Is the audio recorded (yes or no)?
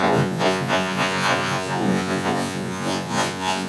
no